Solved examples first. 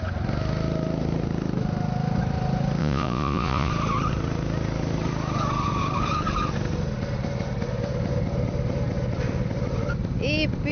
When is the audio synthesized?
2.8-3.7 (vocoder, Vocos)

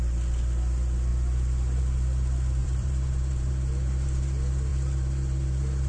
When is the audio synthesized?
2.6-3.5 (vocoder, BigVGAN v2)